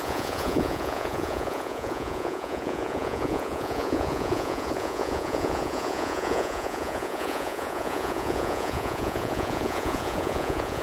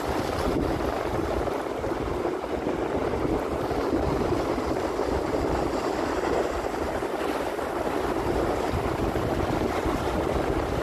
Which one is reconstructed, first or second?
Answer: first